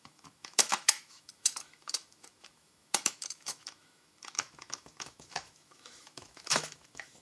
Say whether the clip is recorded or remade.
remade